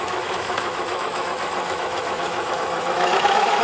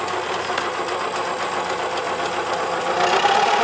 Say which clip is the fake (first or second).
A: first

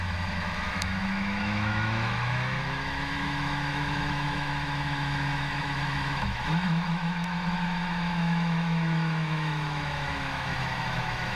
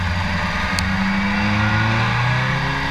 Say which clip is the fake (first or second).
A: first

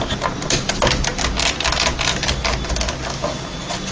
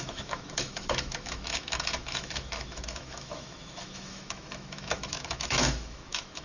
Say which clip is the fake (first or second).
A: second